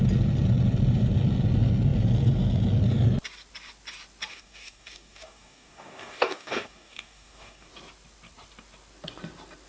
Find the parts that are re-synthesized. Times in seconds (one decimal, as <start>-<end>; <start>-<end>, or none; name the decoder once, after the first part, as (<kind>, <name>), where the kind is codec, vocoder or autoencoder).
4.3-7.7 (codec, DAC)

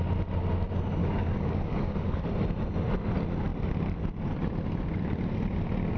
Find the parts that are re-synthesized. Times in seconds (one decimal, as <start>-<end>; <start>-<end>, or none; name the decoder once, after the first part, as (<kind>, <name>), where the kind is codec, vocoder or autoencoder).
1.0-2.3 (codec, DAC)

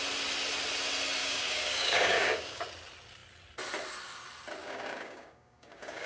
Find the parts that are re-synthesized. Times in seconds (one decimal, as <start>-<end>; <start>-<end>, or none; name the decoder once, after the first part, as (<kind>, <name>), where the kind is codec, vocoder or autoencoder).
1.2-2.6 (codec, DAC); 4.6-6.1

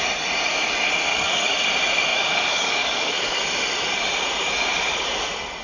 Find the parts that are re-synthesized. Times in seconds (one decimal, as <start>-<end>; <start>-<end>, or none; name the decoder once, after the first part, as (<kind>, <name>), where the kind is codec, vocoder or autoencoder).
1.1-1.7 (codec, DAC); 2.1-3.4

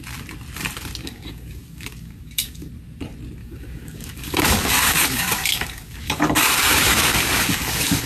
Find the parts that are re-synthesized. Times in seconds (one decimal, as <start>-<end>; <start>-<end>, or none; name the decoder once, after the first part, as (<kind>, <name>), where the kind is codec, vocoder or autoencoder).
1.0-2.7 (codec, DAC); 3.4-8.1